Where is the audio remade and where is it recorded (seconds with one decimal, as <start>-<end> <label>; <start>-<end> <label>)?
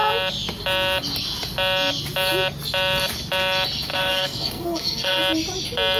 0.0-3.9 recorded; 3.9-5.2 remade; 5.2-6.0 recorded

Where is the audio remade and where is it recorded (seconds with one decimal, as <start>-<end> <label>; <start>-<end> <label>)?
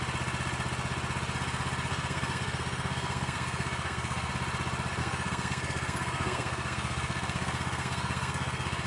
0.0-1.9 recorded; 1.9-4.3 remade; 4.3-5.0 recorded; 5.0-8.9 remade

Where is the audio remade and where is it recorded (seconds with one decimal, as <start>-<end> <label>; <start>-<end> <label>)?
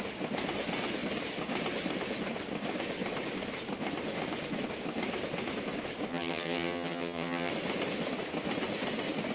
0.0-6.1 recorded; 6.1-7.5 remade; 7.5-9.3 recorded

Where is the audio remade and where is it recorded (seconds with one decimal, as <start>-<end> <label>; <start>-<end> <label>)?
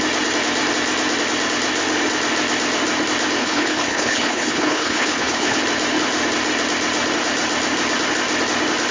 0.0-3.4 recorded; 3.4-5.6 remade; 5.6-8.9 recorded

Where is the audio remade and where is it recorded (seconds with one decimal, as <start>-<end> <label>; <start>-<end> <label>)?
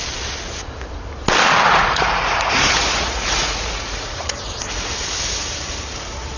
0.0-1.7 recorded; 1.7-4.3 remade; 4.3-6.4 recorded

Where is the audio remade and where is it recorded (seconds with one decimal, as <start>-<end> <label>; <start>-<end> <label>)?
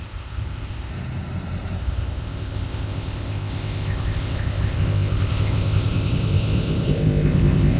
0.0-0.9 remade; 0.9-1.8 recorded; 1.8-7.8 remade